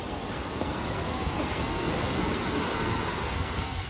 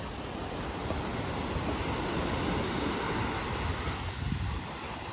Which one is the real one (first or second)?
second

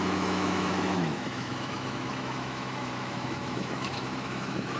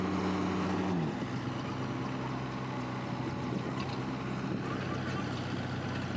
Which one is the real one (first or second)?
second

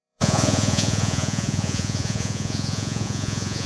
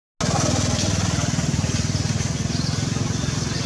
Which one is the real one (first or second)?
second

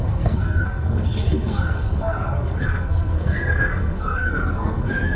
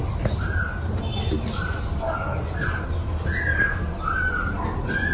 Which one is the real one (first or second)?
second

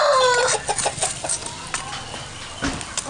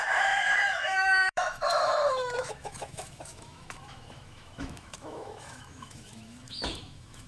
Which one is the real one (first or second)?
first